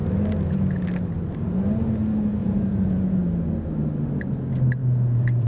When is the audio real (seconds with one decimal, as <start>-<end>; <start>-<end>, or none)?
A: 0.0-2.4; 3.2-4.8